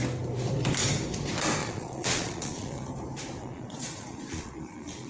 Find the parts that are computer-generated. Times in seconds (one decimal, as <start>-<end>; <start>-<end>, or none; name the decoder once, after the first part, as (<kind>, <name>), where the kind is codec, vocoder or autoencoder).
1.6-2.9 (vocoder, Vocos); 3.4-5.1